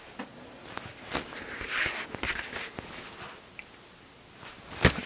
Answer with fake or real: real